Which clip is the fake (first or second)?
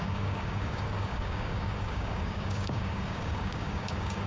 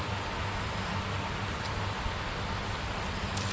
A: first